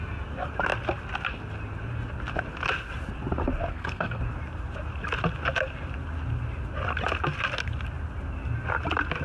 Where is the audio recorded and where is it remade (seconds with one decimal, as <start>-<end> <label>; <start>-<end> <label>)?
0.0-3.7 recorded; 3.7-4.2 remade; 4.2-9.2 recorded